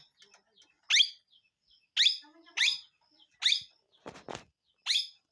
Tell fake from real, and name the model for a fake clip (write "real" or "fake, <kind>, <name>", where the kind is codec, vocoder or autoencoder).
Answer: real